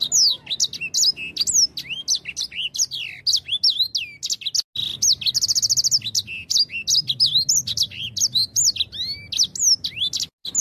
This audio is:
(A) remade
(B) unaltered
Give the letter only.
B